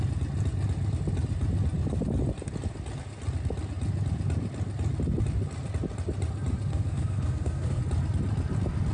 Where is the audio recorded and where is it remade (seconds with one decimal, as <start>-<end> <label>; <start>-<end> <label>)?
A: 0.0-6.7 recorded; 6.7-7.8 remade; 7.8-8.9 recorded